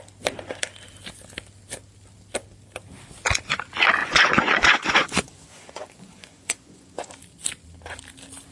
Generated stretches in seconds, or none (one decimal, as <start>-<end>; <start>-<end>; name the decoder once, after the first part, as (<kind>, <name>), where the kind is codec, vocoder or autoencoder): 4.0-7.1 (vocoder, Vocos)